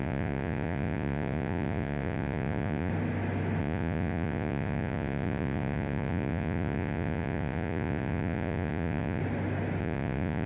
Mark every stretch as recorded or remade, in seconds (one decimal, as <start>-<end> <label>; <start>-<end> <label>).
0.0-2.9 remade; 2.9-3.6 recorded; 3.6-9.2 remade; 9.2-9.8 recorded; 9.8-10.5 remade